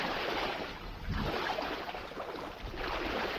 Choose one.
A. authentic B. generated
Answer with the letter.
A